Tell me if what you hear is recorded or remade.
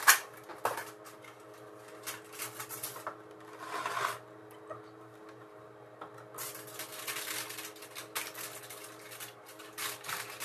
recorded